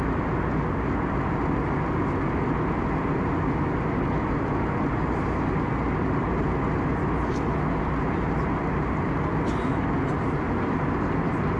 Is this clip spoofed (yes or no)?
no